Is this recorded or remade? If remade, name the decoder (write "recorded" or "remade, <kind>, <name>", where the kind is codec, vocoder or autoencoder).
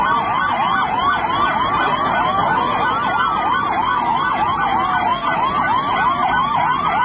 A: recorded